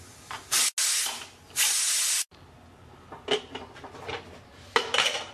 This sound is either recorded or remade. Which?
recorded